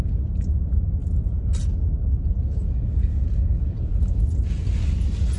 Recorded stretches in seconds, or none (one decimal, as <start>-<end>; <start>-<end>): 0.0-5.4